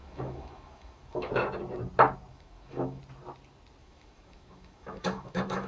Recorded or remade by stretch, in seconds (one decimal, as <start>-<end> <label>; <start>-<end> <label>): 0.0-1.3 remade; 1.3-2.3 recorded; 2.3-3.0 remade; 3.0-3.8 recorded; 3.8-5.7 remade